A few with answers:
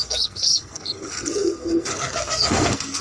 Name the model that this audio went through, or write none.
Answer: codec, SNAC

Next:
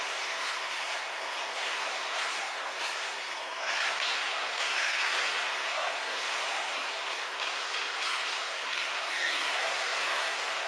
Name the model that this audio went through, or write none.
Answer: codec, SNAC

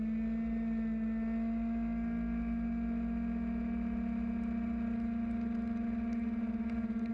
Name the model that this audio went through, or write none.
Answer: none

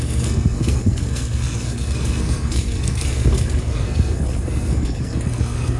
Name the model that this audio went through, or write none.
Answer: codec, SNAC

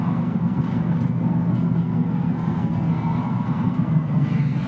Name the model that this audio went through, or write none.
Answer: codec, SNAC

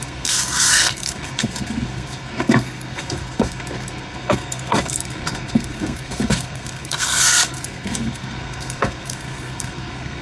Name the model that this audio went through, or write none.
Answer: codec, SNAC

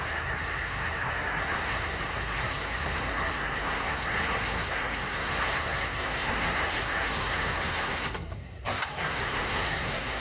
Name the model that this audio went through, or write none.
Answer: codec, SNAC